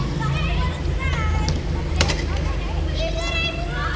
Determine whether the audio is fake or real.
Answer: real